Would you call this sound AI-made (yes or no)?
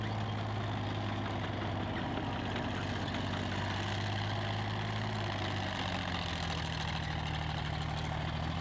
no